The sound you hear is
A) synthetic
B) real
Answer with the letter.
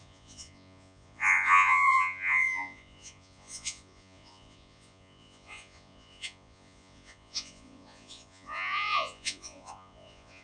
A